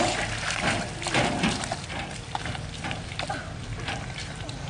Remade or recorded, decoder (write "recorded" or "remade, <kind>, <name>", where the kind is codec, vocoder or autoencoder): remade, vocoder, BigVGAN v2